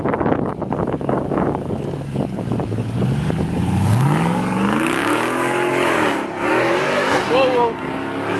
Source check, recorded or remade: remade